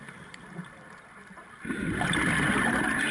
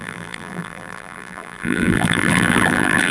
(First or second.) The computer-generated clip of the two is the second